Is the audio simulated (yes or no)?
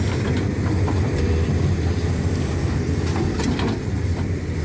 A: no